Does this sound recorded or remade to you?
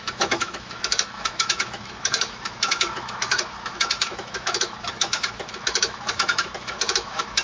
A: remade